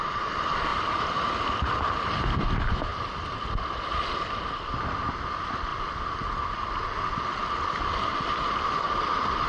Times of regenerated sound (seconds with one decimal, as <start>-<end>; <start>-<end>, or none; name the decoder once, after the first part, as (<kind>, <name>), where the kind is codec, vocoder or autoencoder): 0.7-1.3 (vocoder, BigVGAN v2)